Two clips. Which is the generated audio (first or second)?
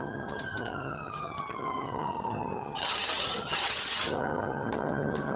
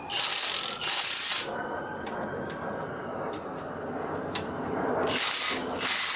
first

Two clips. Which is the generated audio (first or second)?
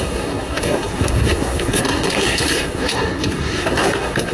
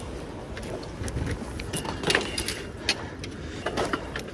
first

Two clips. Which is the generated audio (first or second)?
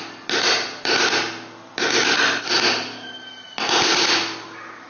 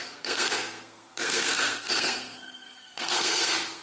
second